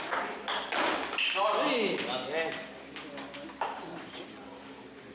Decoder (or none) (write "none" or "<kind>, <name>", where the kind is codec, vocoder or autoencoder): none